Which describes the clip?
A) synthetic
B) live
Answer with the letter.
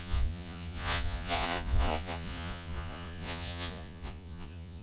A